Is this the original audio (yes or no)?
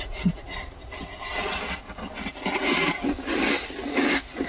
yes